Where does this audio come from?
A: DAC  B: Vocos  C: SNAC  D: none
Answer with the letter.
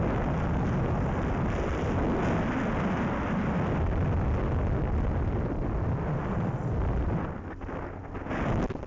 D